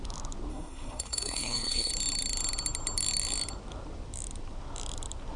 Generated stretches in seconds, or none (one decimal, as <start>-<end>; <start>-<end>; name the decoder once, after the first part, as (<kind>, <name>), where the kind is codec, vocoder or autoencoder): 0.5-1.9 (codec, SNAC)